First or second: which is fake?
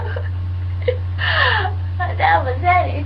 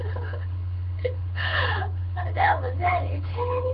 second